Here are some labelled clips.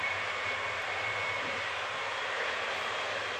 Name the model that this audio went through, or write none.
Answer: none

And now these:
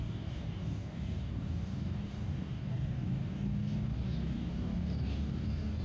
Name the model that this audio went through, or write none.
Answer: codec, DAC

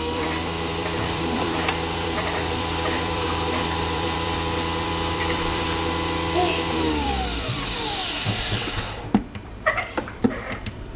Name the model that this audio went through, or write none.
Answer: vocoder, BigVGAN v2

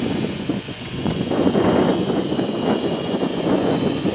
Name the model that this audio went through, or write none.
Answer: vocoder, Vocos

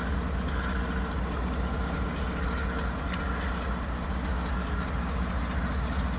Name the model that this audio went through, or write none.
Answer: none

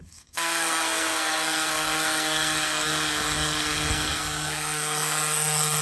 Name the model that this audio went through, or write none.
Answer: codec, SNAC